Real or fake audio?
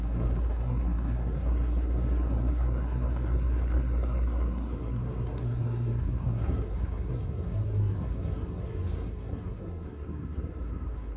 fake